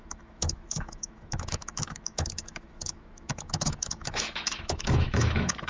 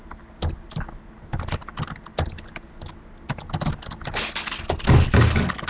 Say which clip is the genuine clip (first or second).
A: second